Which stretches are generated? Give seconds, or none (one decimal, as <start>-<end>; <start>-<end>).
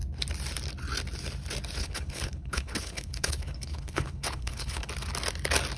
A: 1.8-4.9